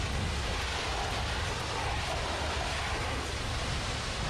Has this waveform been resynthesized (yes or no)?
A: no